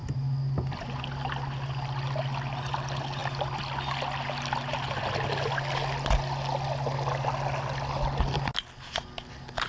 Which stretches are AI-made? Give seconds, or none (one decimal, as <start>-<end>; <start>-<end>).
none